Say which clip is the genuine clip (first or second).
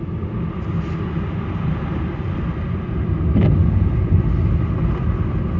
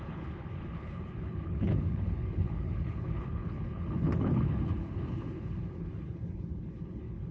first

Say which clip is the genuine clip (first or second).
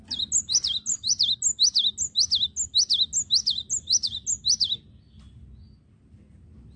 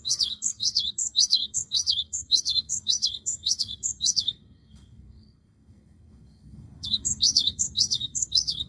first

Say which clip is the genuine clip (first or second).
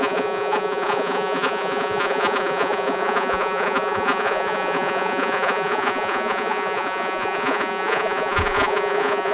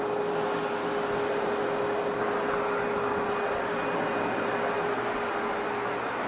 second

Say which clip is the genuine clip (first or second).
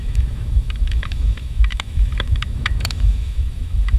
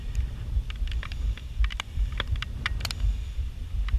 second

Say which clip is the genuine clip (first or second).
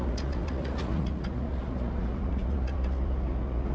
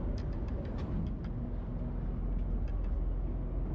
second